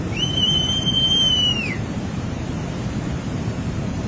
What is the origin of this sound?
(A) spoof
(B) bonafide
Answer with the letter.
A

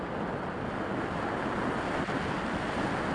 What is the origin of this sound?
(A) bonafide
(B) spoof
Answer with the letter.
A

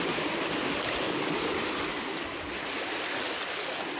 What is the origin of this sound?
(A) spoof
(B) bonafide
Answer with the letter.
B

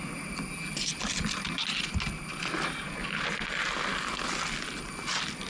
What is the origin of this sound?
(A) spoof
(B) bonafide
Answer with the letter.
B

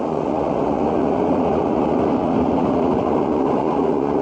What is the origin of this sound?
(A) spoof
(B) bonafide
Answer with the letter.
A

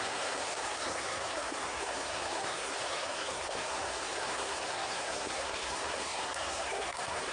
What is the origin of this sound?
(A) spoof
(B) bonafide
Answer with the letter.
A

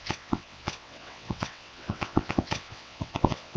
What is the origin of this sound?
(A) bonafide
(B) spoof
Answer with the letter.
B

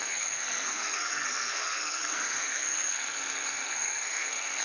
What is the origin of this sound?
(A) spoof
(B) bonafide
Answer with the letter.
A